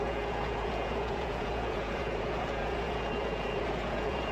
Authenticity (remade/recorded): remade